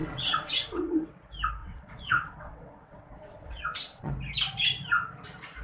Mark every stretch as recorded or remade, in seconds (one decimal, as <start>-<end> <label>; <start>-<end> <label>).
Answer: 0.0-1.1 remade; 1.1-1.6 recorded; 1.6-4.1 remade; 4.1-5.6 recorded